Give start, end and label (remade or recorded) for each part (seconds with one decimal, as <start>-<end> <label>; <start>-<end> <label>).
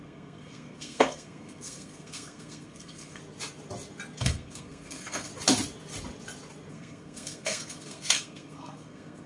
0.0-3.2 remade; 3.2-4.2 recorded; 4.2-5.3 remade; 5.3-6.7 recorded; 6.7-9.3 remade